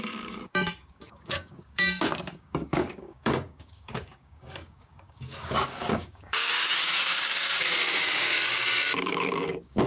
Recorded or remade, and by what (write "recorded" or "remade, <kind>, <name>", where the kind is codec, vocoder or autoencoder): remade, codec, DAC